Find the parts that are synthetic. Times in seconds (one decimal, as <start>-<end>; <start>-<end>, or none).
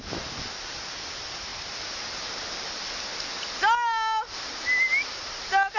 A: none